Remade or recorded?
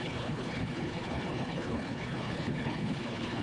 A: remade